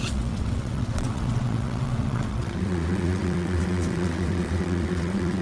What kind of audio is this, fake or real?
fake